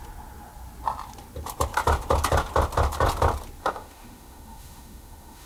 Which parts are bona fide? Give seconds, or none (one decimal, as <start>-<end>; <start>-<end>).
0.0-3.6